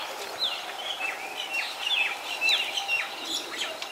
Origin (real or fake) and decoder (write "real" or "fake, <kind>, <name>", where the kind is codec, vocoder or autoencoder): real